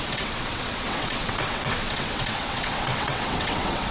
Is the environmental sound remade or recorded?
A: remade